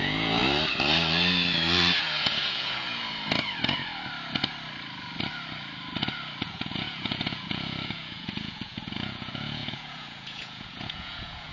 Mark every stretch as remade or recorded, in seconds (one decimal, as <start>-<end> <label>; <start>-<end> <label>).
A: 0.0-0.4 remade; 0.4-2.0 recorded; 2.0-3.0 remade; 3.0-6.4 recorded; 6.4-11.5 remade